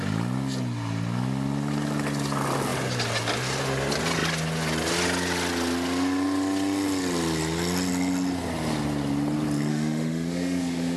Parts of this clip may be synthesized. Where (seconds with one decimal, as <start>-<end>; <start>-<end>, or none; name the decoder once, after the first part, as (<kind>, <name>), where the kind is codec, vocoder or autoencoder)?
9.7-11.0 (autoencoder, DAC-VAE)